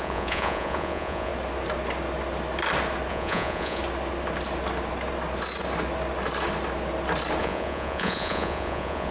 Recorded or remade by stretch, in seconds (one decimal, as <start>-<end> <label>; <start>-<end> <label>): 0.0-1.3 remade; 1.3-3.1 recorded; 3.1-3.8 remade; 3.8-7.4 recorded; 7.4-9.1 remade